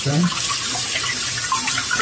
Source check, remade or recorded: recorded